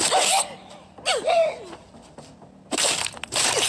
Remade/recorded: recorded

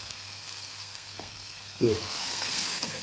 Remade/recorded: remade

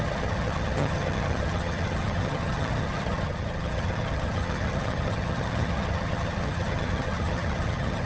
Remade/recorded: remade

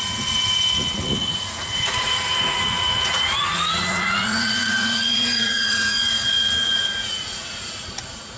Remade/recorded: remade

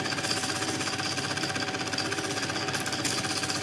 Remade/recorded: recorded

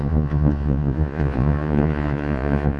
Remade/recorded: remade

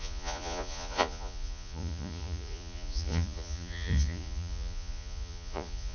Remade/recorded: remade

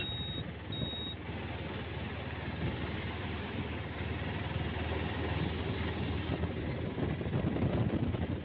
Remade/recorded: recorded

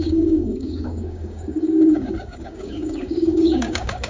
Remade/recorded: remade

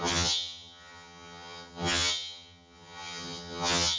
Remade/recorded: remade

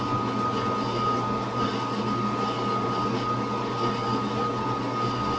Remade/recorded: recorded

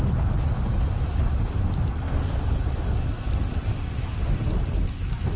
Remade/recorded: recorded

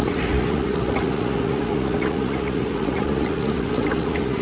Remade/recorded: remade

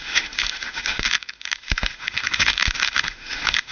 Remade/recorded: remade